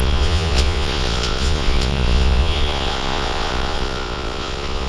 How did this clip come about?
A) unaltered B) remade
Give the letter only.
B